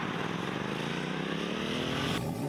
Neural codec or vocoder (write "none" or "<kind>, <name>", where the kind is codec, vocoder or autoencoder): vocoder, BigVGAN v2